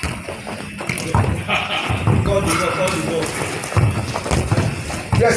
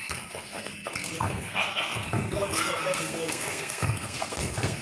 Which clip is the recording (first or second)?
first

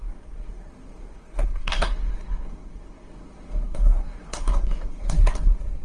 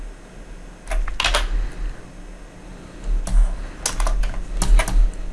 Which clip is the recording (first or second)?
second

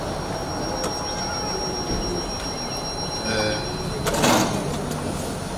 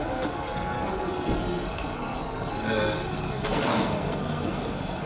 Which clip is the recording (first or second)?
first